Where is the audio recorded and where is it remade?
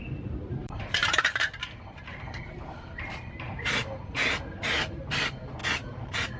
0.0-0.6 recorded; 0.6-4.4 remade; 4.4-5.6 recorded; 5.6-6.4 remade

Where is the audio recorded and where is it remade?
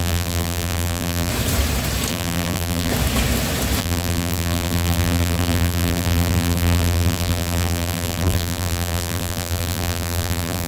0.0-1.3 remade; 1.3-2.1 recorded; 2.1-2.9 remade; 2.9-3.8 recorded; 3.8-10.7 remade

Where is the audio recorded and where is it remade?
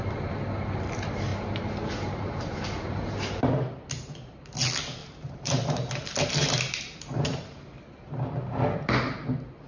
0.0-1.3 recorded; 1.3-3.5 remade; 3.5-5.0 recorded; 5.0-7.6 remade; 7.6-9.7 recorded